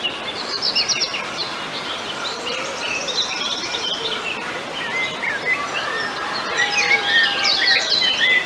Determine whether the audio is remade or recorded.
recorded